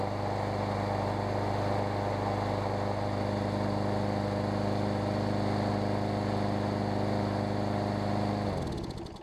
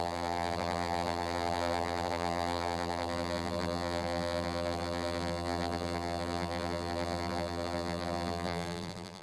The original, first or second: first